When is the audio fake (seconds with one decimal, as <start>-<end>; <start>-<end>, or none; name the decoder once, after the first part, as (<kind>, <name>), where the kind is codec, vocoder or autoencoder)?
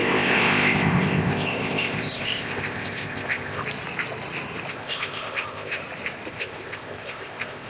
0.0-3.6 (codec, ZipCodec); 4.7-5.8; 6.3-7.7